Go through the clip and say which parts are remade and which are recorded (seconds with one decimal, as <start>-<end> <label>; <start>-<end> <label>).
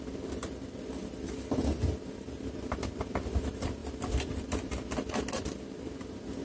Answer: 0.0-6.4 recorded